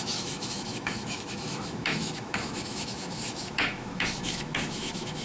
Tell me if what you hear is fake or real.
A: fake